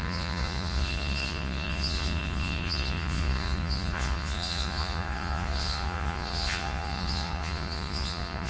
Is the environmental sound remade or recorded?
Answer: remade